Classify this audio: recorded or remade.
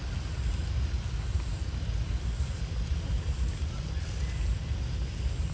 recorded